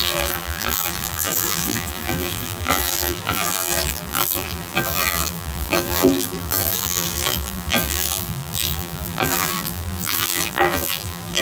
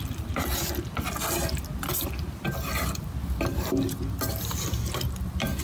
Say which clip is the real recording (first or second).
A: second